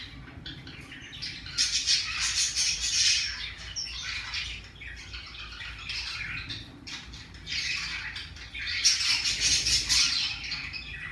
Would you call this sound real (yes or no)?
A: yes